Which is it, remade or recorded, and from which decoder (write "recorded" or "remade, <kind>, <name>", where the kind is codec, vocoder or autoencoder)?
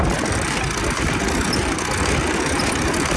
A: recorded